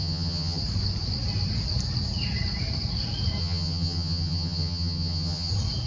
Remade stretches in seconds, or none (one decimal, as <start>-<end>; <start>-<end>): 0.0-0.6; 3.4-5.5